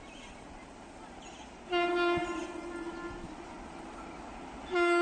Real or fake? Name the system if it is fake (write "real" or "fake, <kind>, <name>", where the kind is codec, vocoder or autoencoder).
real